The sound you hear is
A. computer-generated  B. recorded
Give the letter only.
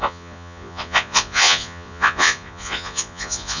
A